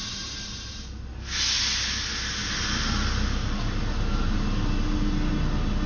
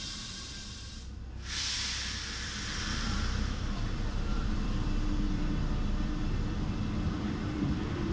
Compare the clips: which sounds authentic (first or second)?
first